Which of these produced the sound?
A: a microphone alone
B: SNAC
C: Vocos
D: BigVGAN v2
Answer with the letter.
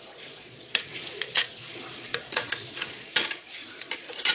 C